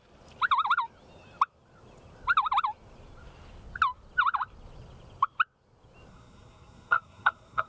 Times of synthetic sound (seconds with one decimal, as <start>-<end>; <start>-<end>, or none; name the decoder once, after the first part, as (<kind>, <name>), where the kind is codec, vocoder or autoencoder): 6.1-7.7 (codec, SNAC)